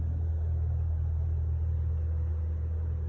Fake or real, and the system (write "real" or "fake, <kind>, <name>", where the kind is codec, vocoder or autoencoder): real